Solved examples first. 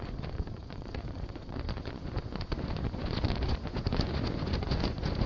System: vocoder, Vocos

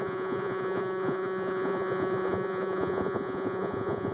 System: vocoder, Vocos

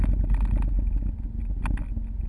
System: none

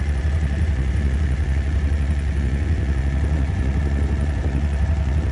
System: vocoder, Vocos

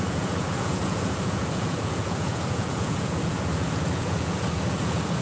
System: vocoder, Vocos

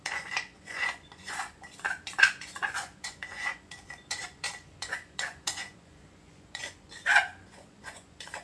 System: vocoder, Vocos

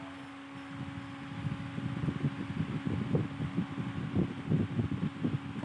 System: none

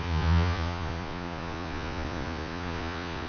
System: vocoder, Vocos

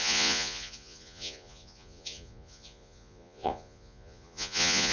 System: vocoder, Vocos